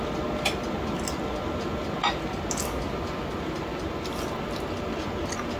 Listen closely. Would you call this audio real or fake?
real